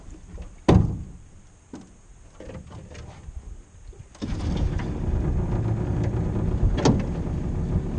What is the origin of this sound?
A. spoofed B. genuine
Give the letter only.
B